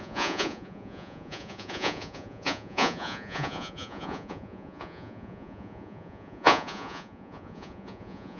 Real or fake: fake